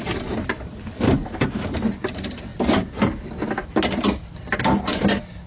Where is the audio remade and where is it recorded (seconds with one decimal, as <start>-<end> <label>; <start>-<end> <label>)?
0.0-5.5 recorded